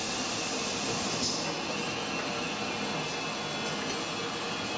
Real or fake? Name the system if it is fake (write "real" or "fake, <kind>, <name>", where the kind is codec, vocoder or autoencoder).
real